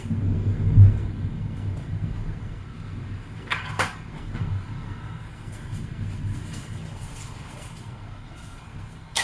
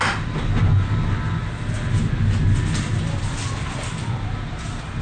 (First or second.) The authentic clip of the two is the second